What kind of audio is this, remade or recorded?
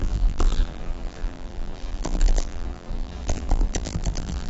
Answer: remade